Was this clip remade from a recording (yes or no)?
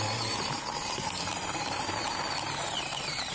no